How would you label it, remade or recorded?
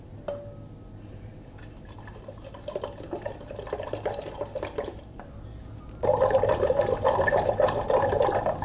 recorded